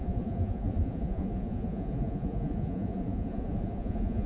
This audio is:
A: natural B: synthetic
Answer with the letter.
B